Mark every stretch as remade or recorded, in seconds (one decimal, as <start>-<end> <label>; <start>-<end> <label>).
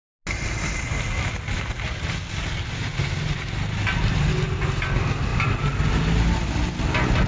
0.0-7.3 recorded